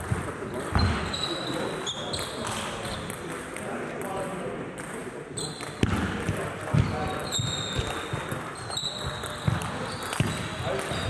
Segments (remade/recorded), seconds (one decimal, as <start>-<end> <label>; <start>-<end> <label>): 0.0-11.1 recorded